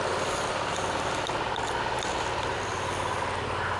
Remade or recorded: recorded